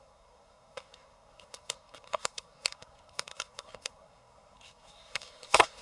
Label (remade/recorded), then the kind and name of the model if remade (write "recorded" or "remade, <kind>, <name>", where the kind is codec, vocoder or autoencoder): remade, codec, SNAC